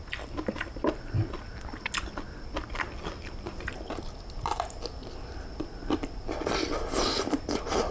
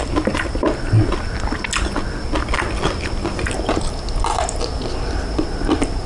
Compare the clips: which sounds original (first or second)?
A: second